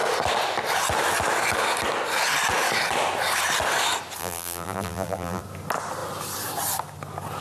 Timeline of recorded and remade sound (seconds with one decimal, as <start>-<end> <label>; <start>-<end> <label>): 0.0-4.2 recorded; 4.2-5.4 remade; 5.4-7.4 recorded